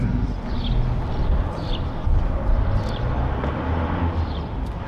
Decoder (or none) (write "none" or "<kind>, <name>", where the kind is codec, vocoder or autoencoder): none